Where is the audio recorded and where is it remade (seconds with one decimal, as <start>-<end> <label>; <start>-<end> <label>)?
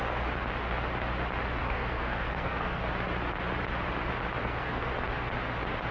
0.0-1.6 recorded; 1.6-2.8 remade; 2.8-4.4 recorded; 4.4-4.9 remade; 4.9-5.9 recorded